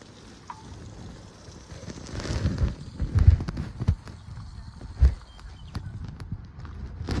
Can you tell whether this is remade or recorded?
recorded